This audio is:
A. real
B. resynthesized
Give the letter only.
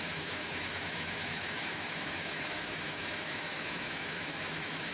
B